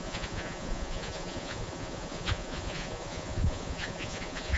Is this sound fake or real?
fake